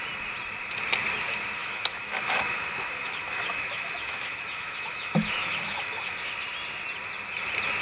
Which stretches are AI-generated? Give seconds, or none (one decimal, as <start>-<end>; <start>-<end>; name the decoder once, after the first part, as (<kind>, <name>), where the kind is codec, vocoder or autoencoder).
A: 1.6-6.3 (autoencoder, DAC-VAE)